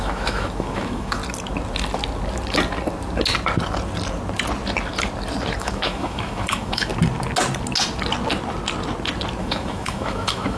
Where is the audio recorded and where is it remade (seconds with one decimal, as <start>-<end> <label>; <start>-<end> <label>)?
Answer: 0.0-1.2 remade; 1.2-5.6 recorded; 5.6-6.9 remade; 6.9-9.4 recorded; 9.4-10.6 remade